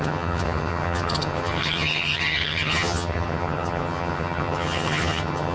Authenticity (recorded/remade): remade